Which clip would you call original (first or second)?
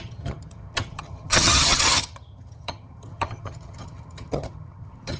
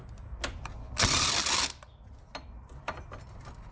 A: second